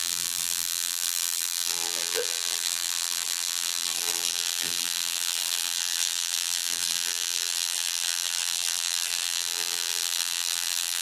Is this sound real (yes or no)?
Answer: no